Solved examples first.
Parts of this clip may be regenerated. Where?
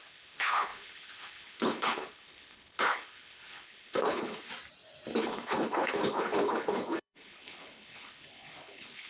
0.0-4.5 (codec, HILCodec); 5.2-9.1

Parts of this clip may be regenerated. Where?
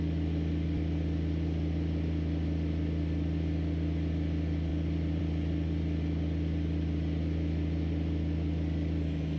none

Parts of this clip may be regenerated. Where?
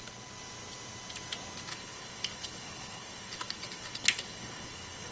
1.7-5.1 (codec, HILCodec)